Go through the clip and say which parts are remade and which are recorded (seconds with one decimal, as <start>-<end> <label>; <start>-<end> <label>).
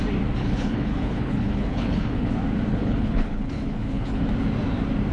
0.0-0.4 recorded; 0.4-2.3 remade; 2.3-2.7 recorded; 2.7-4.2 remade; 4.2-5.1 recorded